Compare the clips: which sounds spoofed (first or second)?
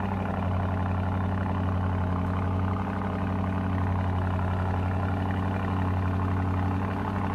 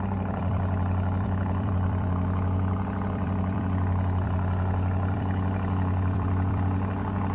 second